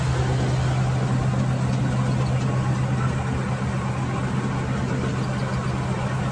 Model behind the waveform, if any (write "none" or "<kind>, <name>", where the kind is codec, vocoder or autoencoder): none